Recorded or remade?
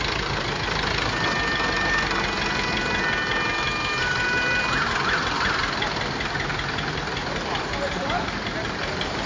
recorded